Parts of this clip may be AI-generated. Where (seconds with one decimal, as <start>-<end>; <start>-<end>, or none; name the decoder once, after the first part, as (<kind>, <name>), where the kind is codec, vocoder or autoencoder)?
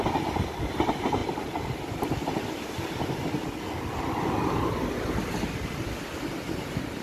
none